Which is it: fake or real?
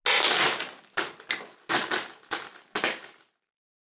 real